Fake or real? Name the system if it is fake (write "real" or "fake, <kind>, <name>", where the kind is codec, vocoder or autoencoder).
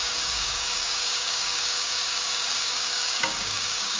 fake, codec, DAC